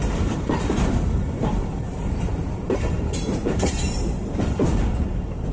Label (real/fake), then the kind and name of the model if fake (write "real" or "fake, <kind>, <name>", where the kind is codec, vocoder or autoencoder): fake, vocoder, BigVGAN v2